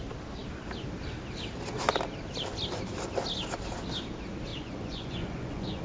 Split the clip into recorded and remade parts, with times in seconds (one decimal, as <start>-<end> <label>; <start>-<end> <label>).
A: 0.0-4.5 recorded; 4.5-5.8 remade